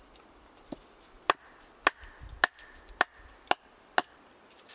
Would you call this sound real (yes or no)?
yes